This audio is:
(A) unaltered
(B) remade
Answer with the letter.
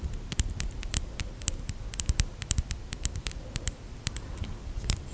A